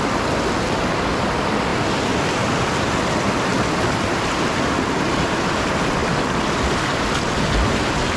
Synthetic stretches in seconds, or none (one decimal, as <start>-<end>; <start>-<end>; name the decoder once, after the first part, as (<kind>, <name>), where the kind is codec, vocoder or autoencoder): none